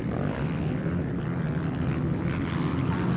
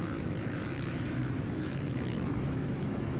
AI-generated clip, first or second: second